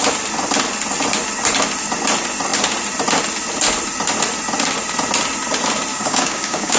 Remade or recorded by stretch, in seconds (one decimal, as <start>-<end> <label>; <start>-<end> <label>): 0.0-5.9 recorded; 5.9-6.8 remade